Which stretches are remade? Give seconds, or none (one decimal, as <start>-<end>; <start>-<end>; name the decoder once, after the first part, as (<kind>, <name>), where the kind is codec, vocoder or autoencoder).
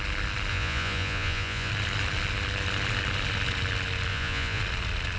0.5-1.7 (vocoder, Vocos); 4.1-4.6